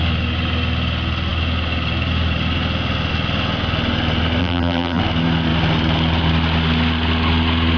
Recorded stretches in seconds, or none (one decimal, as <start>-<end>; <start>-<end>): 0.0-4.4; 5.0-7.8